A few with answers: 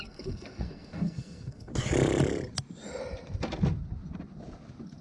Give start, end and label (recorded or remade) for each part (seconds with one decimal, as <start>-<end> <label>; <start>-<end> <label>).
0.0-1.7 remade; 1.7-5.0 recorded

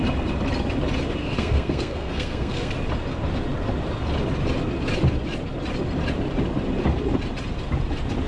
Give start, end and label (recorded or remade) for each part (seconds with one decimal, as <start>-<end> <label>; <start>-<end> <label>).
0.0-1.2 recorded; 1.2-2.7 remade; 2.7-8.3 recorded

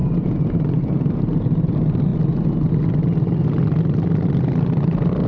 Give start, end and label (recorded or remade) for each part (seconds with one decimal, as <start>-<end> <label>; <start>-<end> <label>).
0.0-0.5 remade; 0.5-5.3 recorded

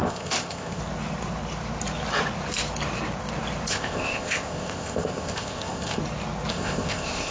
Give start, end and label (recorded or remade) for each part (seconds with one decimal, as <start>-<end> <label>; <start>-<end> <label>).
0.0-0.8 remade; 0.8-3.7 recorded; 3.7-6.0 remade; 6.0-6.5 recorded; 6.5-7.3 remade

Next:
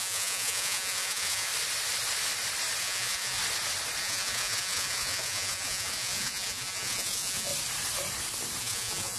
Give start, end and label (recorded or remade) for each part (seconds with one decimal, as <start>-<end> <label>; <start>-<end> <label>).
0.0-1.5 remade; 1.5-2.8 recorded; 2.8-3.4 remade; 3.4-4.0 recorded; 4.0-7.5 remade; 7.5-8.6 recorded; 8.6-9.2 remade

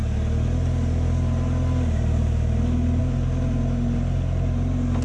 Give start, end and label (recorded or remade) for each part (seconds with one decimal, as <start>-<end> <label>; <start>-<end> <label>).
0.0-5.0 recorded

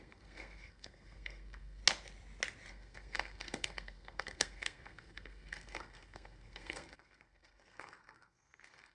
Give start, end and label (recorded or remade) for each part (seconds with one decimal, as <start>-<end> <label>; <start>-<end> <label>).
0.0-1.8 remade; 1.8-2.7 recorded; 2.7-8.9 remade